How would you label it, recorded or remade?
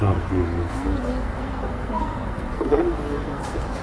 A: remade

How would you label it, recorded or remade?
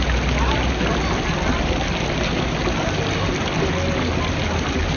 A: recorded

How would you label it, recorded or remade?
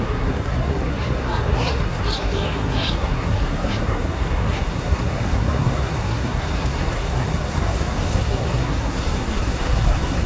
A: remade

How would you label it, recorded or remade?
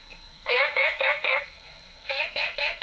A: remade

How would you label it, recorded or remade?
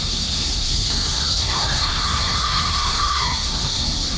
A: remade